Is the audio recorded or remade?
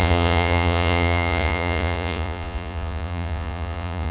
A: remade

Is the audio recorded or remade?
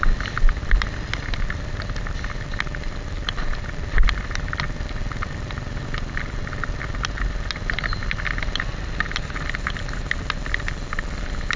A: recorded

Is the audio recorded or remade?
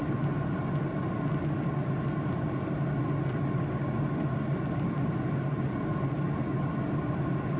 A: recorded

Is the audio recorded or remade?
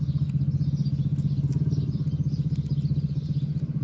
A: recorded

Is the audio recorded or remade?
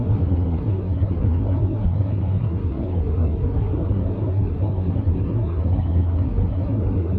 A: remade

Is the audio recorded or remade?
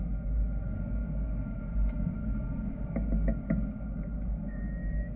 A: remade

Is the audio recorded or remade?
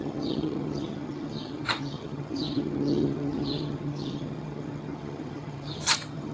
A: remade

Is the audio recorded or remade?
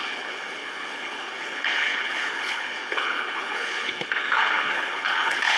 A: remade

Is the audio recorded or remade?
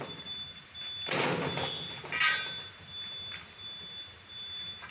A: recorded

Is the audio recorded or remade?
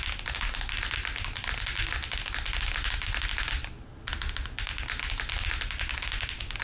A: recorded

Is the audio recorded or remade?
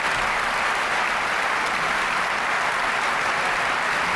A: recorded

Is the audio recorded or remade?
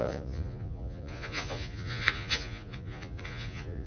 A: remade